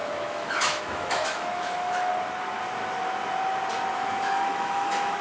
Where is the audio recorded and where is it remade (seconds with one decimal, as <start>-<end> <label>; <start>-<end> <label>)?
0.0-2.1 remade; 2.1-3.9 recorded; 3.9-5.2 remade